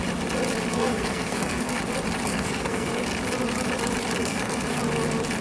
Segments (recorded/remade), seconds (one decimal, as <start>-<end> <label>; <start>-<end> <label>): 0.0-0.7 recorded; 0.7-1.8 remade; 1.8-2.3 recorded; 2.3-3.0 remade; 3.0-4.2 recorded; 4.2-4.8 remade; 4.8-5.4 recorded